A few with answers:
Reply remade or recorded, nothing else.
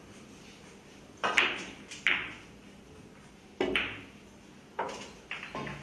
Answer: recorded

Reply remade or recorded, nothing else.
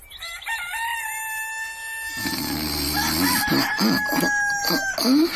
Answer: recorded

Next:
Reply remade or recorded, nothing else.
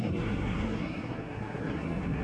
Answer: remade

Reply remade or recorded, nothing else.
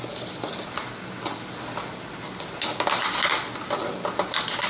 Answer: recorded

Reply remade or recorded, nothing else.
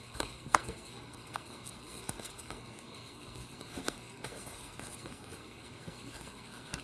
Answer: remade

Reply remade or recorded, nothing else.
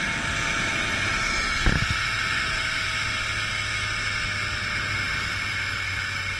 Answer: recorded